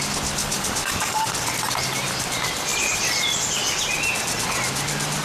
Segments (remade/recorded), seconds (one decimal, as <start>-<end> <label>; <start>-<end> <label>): 0.0-0.4 recorded; 0.4-1.3 remade; 1.3-5.2 recorded